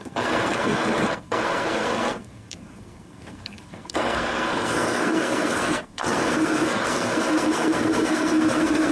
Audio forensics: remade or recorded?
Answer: remade